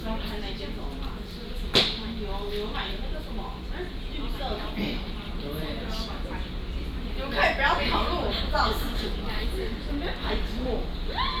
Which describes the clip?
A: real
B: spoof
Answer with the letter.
A